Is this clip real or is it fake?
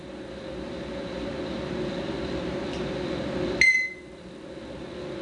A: real